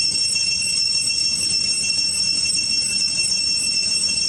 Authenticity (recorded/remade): recorded